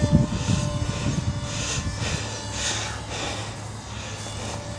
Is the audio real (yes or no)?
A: yes